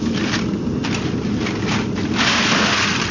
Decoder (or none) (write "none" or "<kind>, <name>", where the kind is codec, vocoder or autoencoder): none